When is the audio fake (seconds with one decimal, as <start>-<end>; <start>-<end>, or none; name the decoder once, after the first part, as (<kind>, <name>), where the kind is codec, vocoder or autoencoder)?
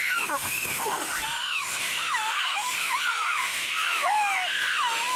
0.0-5.2 (autoencoder, DAC-VAE)